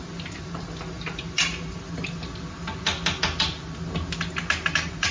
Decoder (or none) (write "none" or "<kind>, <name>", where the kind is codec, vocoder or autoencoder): none